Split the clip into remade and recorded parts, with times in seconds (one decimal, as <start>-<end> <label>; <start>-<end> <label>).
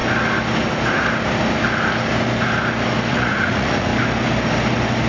0.0-3.1 recorded; 3.1-3.9 remade; 3.9-5.1 recorded